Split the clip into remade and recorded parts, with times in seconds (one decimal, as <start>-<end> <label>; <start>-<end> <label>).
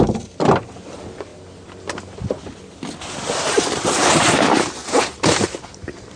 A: 0.0-6.2 recorded